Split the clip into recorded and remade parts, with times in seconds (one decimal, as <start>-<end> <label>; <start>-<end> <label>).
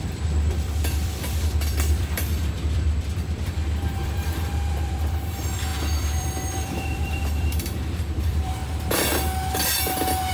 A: 0.0-8.6 remade; 8.6-10.3 recorded